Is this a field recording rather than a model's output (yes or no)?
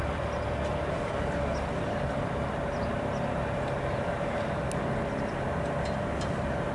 yes